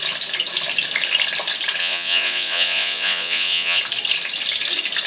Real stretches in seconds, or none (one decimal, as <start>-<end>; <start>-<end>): 0.0-1.8; 3.8-5.1